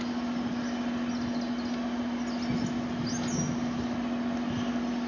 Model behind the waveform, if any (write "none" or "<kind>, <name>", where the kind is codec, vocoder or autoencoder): none